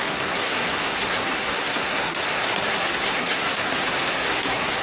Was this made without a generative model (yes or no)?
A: no